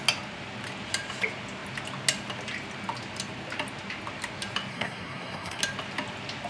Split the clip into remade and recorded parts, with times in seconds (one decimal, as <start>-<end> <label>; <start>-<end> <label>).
0.0-4.7 recorded; 4.7-5.6 remade; 5.6-6.5 recorded